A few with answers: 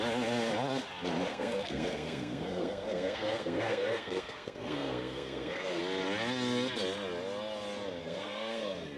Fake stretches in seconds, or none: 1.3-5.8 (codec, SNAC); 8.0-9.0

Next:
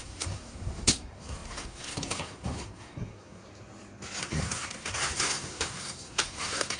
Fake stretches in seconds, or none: 0.0-3.4 (codec, SNAC); 4.2-6.8

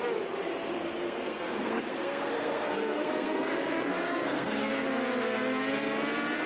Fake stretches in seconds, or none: 0.8-4.7 (codec, SNAC)